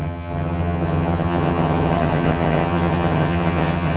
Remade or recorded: remade